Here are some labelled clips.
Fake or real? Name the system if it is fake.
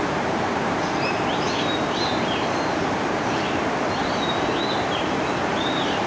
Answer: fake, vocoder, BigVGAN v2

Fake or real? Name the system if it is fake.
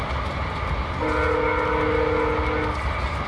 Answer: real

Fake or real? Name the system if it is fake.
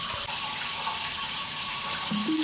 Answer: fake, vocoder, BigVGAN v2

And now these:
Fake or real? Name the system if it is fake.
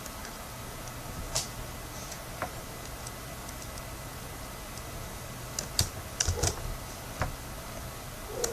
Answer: real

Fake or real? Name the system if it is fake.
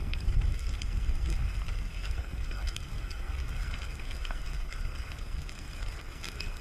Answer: fake, codec, SNAC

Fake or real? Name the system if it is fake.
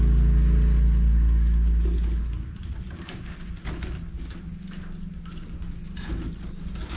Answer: real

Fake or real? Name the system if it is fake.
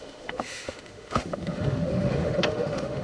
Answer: fake, autoencoder, DAC-VAE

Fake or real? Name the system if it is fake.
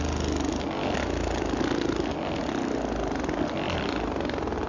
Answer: real